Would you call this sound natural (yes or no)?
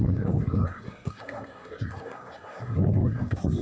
no